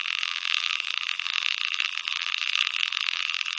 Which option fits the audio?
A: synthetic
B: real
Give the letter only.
A